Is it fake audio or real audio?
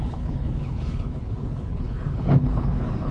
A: fake